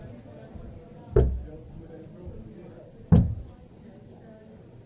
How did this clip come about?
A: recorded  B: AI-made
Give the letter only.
A